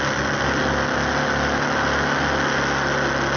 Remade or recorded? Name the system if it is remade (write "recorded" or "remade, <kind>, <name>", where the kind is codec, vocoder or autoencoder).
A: recorded